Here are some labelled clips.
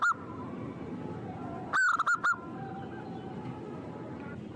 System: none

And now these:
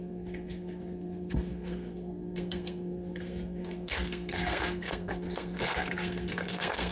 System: codec, SNAC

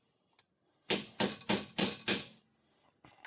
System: none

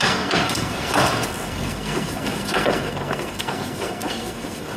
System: codec, SNAC